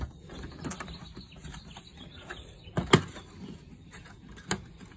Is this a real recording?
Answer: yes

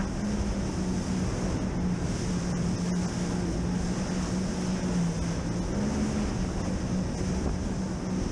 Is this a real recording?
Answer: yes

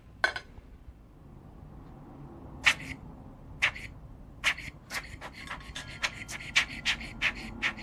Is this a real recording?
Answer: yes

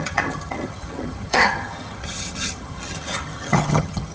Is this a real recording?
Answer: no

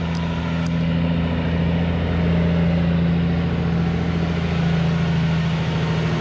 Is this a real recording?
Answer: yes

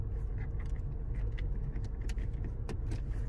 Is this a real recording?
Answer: yes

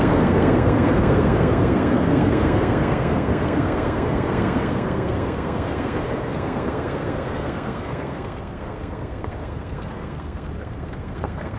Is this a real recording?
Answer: no